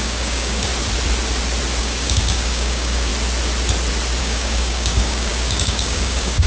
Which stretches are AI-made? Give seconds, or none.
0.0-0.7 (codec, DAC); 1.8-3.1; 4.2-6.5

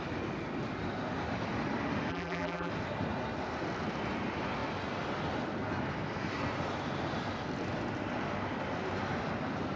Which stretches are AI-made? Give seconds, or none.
2.1-2.7 (vocoder, BigVGAN v2)

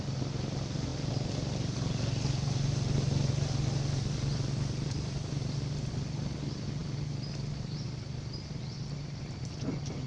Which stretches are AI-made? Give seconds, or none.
none

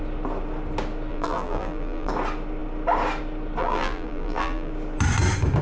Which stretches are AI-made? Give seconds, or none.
1.1-2.1 (vocoder, BigVGAN v2); 3.6-4.7

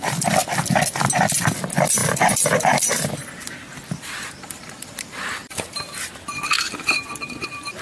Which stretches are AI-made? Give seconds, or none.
0.0-0.4 (vocoder, BigVGAN v2); 1.4-7.8

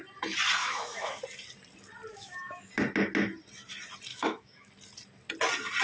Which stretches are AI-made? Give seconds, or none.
0.6-1.2 (autoencoder, DAC-VAE); 2.1-2.7; 4.1-4.7

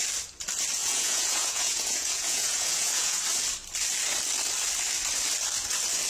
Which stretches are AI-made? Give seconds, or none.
0.8-3.2 (vocoder, Vocos)